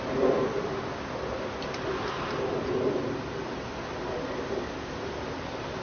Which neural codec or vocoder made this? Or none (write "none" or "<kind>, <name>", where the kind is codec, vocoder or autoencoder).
none